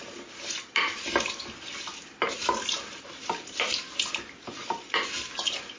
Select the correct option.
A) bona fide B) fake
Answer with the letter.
A